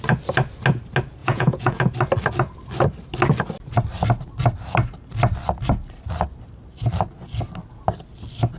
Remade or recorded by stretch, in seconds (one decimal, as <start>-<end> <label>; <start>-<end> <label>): 0.0-1.2 recorded; 1.2-1.8 remade; 1.8-8.6 recorded